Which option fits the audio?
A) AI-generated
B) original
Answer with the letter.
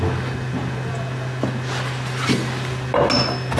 B